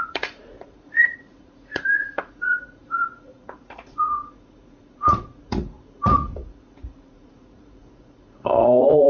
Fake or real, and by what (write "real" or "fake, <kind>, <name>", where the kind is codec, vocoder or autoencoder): fake, vocoder, Vocos